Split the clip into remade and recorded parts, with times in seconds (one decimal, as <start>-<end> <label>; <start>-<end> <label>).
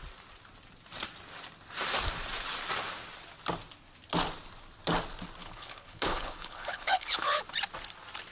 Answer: 0.0-5.4 recorded; 5.4-7.4 remade; 7.4-8.3 recorded